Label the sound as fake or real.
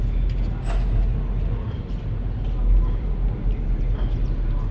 real